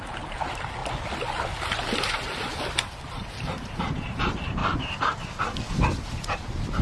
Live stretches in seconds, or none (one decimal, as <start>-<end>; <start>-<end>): 0.8-3.7; 4.6-6.1